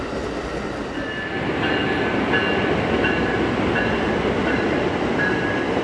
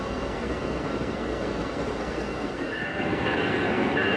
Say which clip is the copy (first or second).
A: second